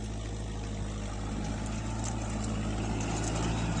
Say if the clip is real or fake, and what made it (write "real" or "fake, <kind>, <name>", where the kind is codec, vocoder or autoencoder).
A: real